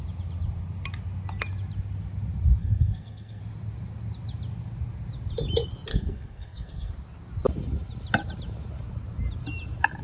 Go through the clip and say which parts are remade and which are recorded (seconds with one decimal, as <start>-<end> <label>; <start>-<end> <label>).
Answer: 0.0-2.6 recorded; 2.6-3.4 remade; 3.4-5.9 recorded; 5.9-6.9 remade; 6.9-10.0 recorded